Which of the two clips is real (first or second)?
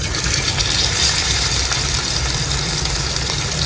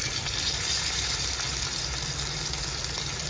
second